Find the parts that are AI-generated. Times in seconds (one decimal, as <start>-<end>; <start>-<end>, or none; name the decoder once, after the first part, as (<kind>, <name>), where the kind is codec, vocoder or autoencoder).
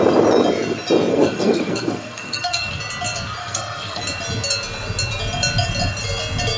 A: 1.1-2.8 (codec, SNAC); 3.4-4.0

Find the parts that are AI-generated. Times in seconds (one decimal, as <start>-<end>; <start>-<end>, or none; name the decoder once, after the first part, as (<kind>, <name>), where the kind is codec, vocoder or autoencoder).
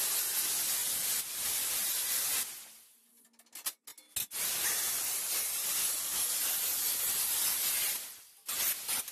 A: none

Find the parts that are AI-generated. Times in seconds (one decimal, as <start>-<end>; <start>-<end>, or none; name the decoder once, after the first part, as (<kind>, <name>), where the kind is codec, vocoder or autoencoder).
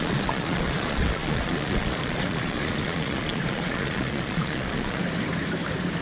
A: 0.0-5.0 (vocoder, Vocos)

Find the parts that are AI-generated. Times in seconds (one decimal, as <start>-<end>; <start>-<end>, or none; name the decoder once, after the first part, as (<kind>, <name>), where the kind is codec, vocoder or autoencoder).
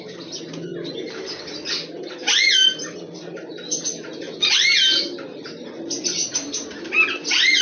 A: 2.7-4.5 (vocoder, BigVGAN v2); 6.2-6.8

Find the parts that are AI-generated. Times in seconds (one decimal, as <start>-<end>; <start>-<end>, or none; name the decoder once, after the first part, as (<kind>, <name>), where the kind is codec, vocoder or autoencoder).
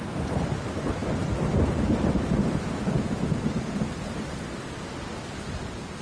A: none